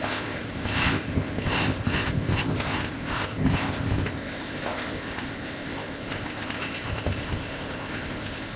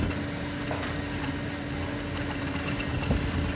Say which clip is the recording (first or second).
second